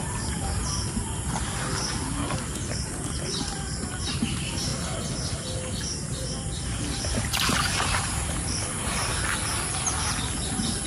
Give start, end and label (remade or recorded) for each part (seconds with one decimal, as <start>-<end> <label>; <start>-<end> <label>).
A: 0.0-0.6 remade; 0.6-2.7 recorded; 2.7-4.7 remade; 4.7-7.0 recorded; 7.0-9.1 remade; 9.1-10.9 recorded

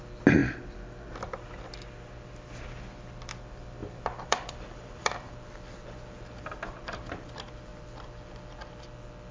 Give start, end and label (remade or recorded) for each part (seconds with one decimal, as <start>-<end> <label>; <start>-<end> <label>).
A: 0.0-3.8 recorded; 3.8-5.4 remade; 5.4-9.3 recorded